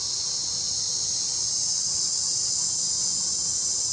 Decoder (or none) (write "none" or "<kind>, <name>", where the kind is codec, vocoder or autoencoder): none